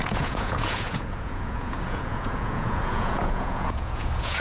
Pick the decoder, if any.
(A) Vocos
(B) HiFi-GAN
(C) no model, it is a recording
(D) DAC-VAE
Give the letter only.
A